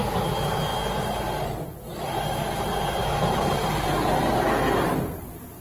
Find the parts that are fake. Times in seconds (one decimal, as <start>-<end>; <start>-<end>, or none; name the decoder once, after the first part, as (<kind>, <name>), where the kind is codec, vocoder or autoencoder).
3.0-3.5 (autoencoder, DAC-VAE)